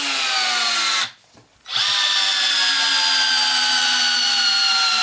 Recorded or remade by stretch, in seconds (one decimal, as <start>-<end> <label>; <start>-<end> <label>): 0.0-4.2 recorded; 4.2-5.0 remade